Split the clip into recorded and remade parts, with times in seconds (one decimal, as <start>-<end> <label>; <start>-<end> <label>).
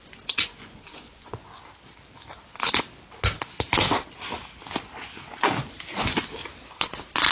0.0-1.6 remade; 1.6-6.0 recorded; 6.0-6.4 remade; 6.4-7.3 recorded